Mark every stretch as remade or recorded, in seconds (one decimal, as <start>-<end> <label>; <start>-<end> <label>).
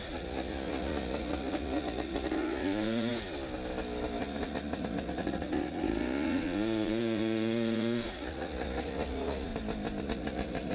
0.0-3.1 remade; 3.1-4.2 recorded; 4.2-9.5 remade; 9.5-10.0 recorded; 10.0-10.7 remade